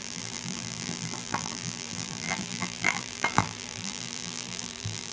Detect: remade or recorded remade